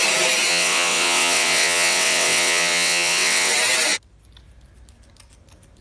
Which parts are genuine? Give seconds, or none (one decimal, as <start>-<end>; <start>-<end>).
0.0-0.5; 3.5-5.8